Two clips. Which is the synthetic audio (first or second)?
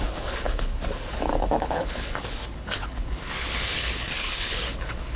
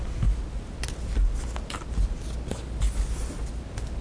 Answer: first